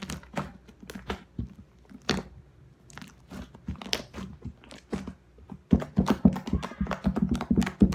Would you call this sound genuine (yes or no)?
yes